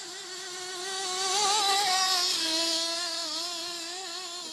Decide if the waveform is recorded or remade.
recorded